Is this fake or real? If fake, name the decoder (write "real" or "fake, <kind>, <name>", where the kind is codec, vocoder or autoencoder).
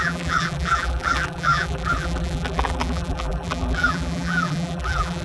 fake, vocoder, BigVGAN v2